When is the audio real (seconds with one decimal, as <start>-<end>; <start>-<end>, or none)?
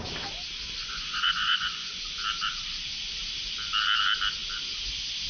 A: 0.0-0.8; 2.0-5.3